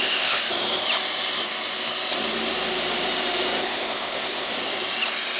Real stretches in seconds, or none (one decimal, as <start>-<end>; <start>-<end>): 0.4-3.6; 4.5-5.4